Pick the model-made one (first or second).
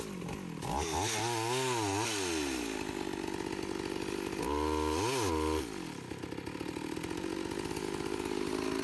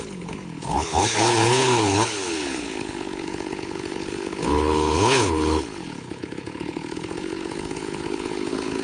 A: second